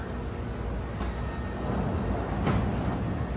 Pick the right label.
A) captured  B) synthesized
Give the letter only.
A